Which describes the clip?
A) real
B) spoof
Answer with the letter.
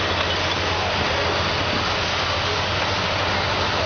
A